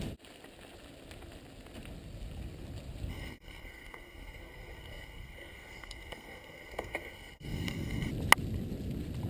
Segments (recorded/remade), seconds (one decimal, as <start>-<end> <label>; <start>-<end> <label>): 0.0-3.1 recorded; 3.1-8.1 remade; 8.1-9.3 recorded